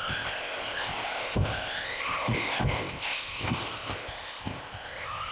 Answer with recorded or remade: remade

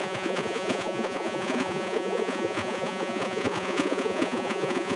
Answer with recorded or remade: remade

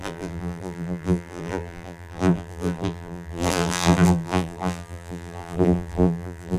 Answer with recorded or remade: remade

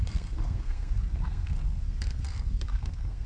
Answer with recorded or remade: remade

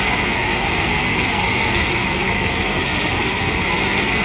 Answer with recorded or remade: remade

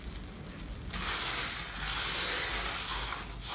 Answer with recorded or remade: recorded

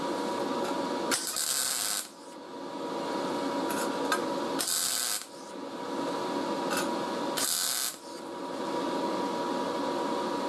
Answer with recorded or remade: recorded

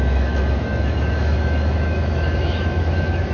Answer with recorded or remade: remade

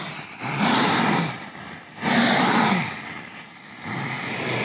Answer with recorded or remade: recorded